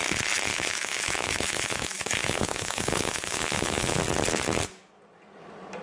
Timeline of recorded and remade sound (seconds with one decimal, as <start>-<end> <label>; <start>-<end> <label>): 0.0-0.5 recorded; 0.5-4.0 remade; 4.0-5.8 recorded